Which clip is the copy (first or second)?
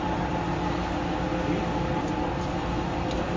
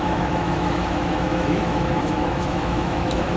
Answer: second